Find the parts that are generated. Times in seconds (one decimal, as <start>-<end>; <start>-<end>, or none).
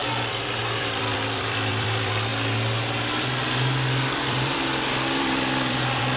0.0-2.3; 4.2-6.2